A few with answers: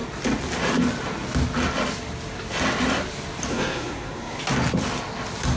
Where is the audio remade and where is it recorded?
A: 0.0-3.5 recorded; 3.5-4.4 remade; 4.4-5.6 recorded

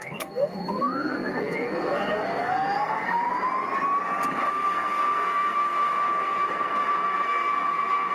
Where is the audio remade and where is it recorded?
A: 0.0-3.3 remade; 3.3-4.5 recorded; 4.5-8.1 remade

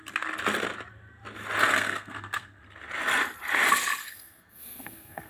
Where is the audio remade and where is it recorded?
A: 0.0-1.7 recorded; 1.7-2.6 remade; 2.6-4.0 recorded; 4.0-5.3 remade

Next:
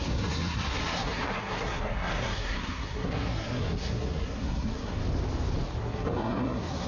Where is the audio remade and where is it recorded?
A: 0.0-5.0 remade; 5.0-5.8 recorded; 5.8-6.9 remade

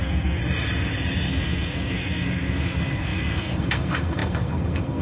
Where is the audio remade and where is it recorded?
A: 0.0-0.4 remade; 0.4-1.3 recorded; 1.3-5.0 remade

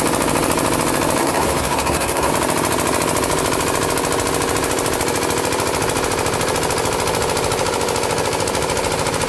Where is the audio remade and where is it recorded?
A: 0.0-1.2 recorded; 1.2-2.3 remade; 2.3-9.3 recorded